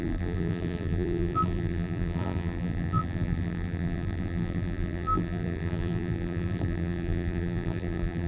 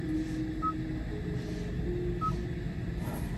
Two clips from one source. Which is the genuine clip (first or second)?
second